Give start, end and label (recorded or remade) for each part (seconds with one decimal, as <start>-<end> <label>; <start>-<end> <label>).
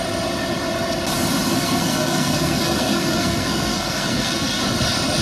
0.0-1.6 recorded; 1.6-4.6 remade; 4.6-5.2 recorded